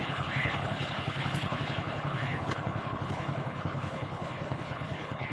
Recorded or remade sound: remade